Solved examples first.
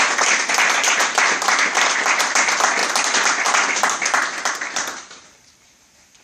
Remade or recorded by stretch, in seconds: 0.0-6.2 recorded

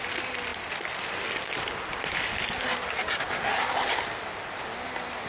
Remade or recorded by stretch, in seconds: 0.0-5.3 recorded

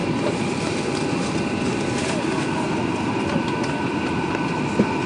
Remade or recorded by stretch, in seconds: 0.0-5.1 recorded

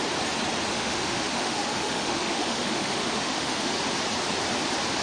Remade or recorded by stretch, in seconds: 0.0-0.7 recorded; 0.7-3.7 remade; 3.7-5.0 recorded

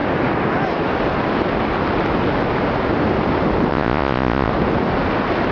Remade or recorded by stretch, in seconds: 0.0-3.7 recorded; 3.7-4.5 remade; 4.5-5.5 recorded

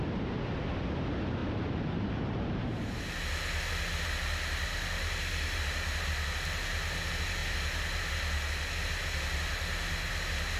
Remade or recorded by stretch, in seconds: 0.0-1.4 recorded; 1.4-3.0 remade; 3.0-10.6 recorded

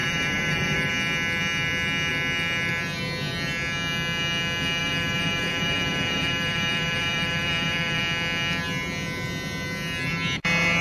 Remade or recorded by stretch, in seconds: 0.0-0.9 remade; 0.9-4.8 recorded; 4.8-8.0 remade; 8.0-10.8 recorded

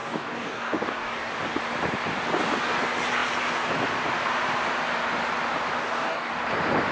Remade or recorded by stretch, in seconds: 0.0-1.3 remade; 1.3-5.8 recorded; 5.8-6.3 remade; 6.3-6.9 recorded